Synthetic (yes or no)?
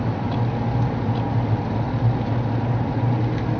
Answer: no